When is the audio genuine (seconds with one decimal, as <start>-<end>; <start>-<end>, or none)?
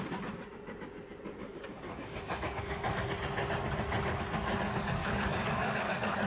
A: 0.0-1.4; 3.0-5.0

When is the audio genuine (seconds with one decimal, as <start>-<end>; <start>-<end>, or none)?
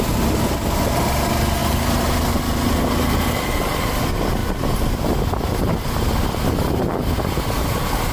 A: 0.0-1.6; 2.4-8.1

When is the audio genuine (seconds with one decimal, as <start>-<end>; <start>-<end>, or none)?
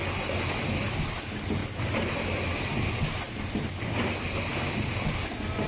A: 0.0-5.7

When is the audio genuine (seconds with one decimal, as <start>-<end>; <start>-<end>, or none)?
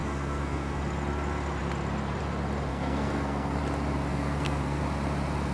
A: 0.8-2.7; 3.6-4.1; 4.8-5.5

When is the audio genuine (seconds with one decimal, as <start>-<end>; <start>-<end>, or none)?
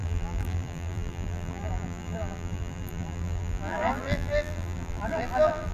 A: none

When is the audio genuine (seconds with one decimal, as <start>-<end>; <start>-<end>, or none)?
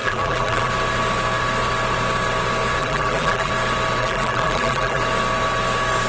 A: 0.7-2.8; 3.5-4.0; 5.0-6.1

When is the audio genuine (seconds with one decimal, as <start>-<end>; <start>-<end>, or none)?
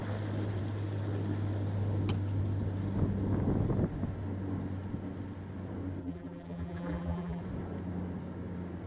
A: 0.0-6.0; 7.4-8.9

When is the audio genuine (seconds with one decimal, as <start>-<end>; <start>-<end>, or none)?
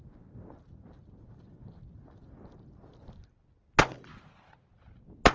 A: 0.0-5.3